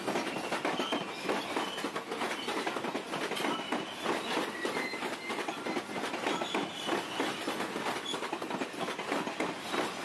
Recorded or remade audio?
recorded